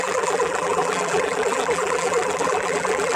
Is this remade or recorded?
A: remade